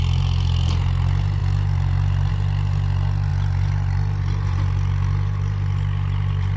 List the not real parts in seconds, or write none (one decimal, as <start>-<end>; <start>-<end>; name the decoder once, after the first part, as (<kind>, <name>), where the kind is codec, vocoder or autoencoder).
none